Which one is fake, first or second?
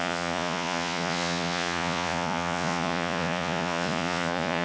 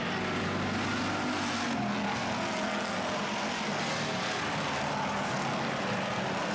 first